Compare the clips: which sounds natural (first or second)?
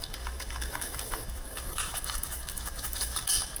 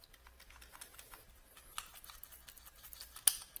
second